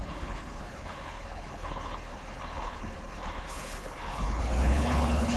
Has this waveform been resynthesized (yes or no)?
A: yes